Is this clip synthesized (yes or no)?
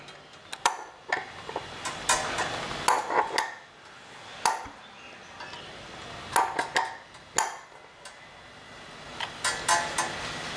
no